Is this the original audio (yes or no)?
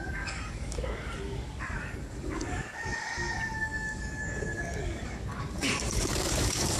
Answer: no